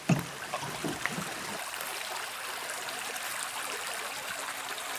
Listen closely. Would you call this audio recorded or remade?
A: remade